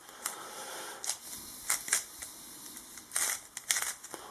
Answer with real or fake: real